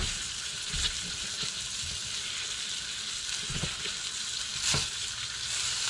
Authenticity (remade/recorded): recorded